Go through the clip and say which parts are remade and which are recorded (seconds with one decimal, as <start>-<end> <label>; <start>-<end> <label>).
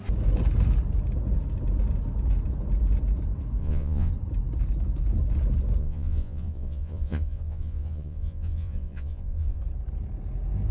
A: 0.0-3.6 recorded; 3.6-4.1 remade; 4.1-5.8 recorded; 5.8-9.6 remade; 9.6-10.7 recorded